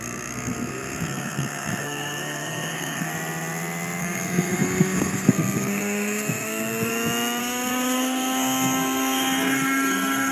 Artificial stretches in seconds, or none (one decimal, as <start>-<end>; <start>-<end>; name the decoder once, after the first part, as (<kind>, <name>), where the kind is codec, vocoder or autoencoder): 0.0-3.1 (codec, SNAC); 4.0-6.9; 7.4-10.3